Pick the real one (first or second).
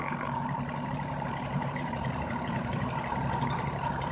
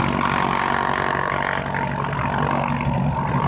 second